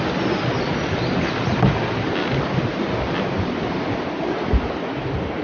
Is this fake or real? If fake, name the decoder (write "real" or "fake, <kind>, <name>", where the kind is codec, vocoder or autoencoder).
real